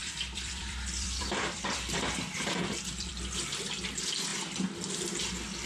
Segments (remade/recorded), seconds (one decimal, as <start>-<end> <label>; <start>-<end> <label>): 0.0-3.1 remade; 3.1-5.7 recorded